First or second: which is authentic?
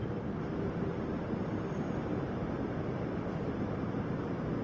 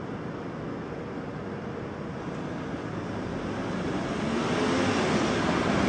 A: second